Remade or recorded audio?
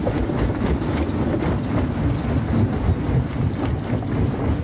recorded